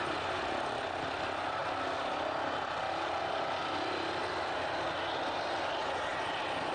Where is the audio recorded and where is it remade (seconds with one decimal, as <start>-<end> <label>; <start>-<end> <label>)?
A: 0.0-6.7 recorded